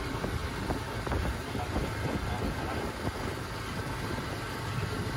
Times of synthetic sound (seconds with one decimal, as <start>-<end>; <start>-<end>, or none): none